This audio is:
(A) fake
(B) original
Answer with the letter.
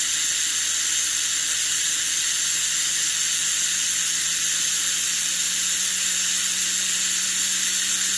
B